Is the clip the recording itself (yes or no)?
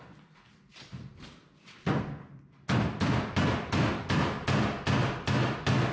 yes